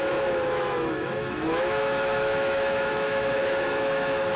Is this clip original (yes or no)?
no